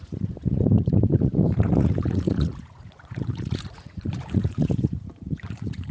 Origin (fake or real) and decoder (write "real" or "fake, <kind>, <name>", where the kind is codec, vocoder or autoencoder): fake, vocoder, Vocos